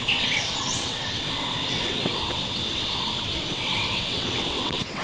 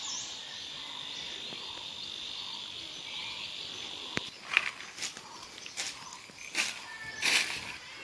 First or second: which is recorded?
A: second